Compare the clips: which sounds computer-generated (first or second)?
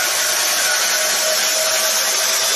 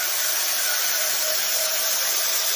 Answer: second